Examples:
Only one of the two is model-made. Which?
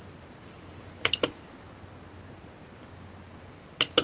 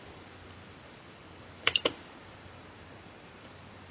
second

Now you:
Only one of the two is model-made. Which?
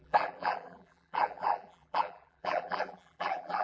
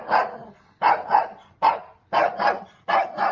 first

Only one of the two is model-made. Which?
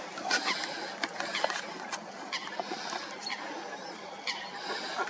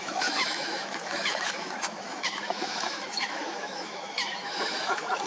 second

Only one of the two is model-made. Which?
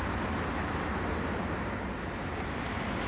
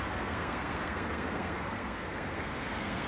second